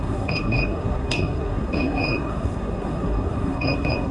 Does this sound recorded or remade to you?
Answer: remade